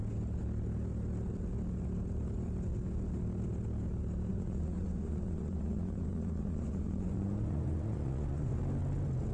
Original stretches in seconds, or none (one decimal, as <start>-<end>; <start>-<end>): 0.0-4.3; 8.6-9.3